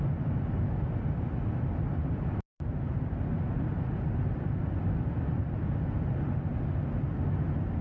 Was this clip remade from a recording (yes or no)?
no